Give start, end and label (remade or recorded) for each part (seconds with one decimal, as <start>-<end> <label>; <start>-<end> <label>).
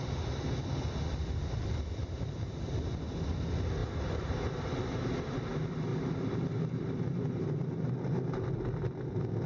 0.0-2.0 recorded; 2.0-2.7 remade; 2.7-3.8 recorded; 3.8-4.9 remade; 4.9-5.9 recorded; 5.9-7.9 remade; 7.9-9.5 recorded